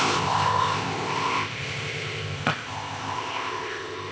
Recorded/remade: remade